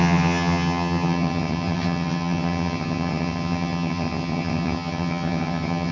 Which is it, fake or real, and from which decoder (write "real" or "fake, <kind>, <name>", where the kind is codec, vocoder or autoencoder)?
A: fake, vocoder, HiFi-GAN